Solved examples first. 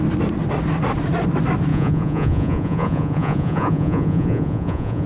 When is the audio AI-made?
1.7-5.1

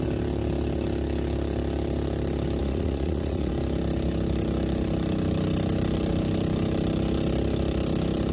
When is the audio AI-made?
2.6-3.5

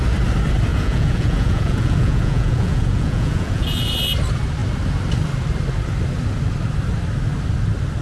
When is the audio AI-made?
0.7-3.9

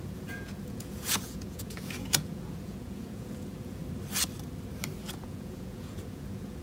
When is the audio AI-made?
0.0-3.8; 5.1-6.6